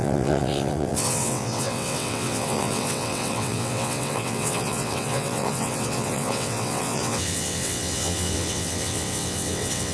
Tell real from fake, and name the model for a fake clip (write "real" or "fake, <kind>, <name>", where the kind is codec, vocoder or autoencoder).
fake, vocoder, WaveNeXt